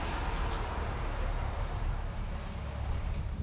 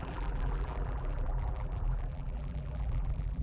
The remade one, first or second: second